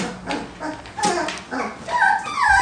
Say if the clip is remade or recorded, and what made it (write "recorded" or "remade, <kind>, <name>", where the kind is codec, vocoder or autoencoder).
recorded